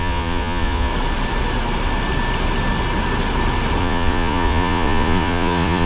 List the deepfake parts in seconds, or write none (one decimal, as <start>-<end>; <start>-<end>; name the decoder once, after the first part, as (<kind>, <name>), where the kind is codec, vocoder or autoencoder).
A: 0.0-0.9 (vocoder, Vocos); 3.8-5.9